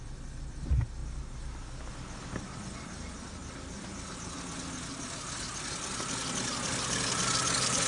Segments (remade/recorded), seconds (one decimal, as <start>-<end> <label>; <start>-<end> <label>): 0.0-7.9 recorded